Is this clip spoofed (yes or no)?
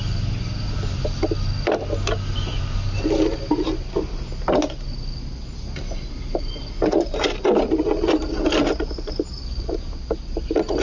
no